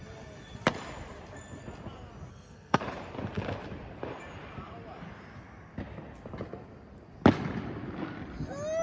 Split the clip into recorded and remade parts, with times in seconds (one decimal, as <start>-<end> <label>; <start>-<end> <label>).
0.0-2.3 recorded; 2.3-2.8 remade; 2.8-8.8 recorded